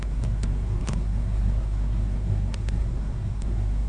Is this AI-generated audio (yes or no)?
yes